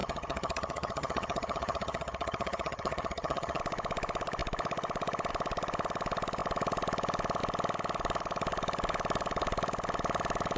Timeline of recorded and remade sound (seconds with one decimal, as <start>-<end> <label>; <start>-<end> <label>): 0.0-3.6 remade; 3.6-10.6 recorded

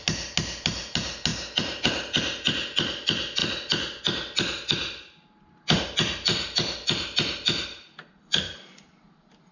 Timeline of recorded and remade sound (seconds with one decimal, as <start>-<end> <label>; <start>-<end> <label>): 0.0-9.5 recorded

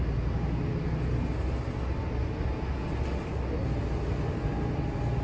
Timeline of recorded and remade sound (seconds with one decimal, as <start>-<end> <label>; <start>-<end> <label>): 0.0-5.2 recorded

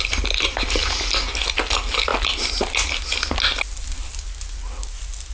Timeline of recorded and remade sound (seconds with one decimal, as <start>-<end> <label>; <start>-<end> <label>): 0.0-5.3 recorded

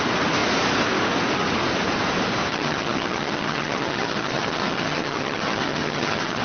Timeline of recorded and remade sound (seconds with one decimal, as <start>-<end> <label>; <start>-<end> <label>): 0.0-2.5 recorded; 2.5-6.4 remade

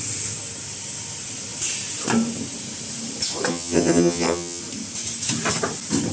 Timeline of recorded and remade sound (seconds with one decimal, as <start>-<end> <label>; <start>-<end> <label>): 0.0-3.5 recorded; 3.5-4.6 remade; 4.6-6.1 recorded

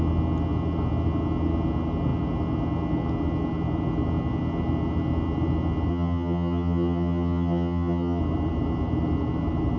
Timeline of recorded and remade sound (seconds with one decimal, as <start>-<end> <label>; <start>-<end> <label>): 0.0-5.9 recorded; 5.9-8.2 remade; 8.2-9.8 recorded